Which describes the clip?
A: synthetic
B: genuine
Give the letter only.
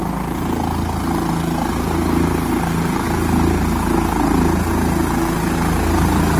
B